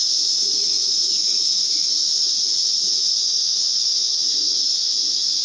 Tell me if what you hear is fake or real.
fake